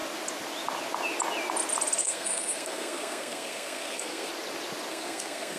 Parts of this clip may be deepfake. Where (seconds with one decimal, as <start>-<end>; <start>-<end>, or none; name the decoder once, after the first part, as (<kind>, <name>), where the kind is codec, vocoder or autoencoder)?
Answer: 2.0-4.3 (codec, SNAC); 4.9-5.6